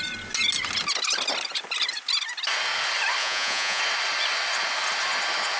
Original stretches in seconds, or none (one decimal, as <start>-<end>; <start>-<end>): 0.0-3.2; 3.8-5.6